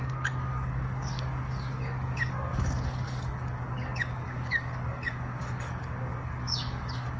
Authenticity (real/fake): fake